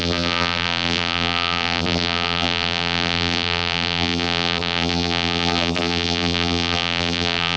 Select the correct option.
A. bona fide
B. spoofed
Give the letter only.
B